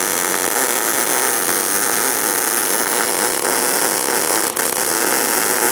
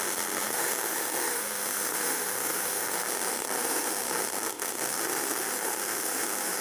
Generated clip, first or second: second